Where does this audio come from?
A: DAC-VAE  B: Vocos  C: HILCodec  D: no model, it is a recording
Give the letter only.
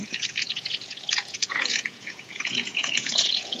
B